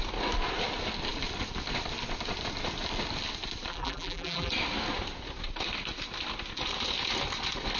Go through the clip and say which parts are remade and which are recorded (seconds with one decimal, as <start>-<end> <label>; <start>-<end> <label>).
0.0-3.7 recorded; 3.7-4.5 remade; 4.5-7.8 recorded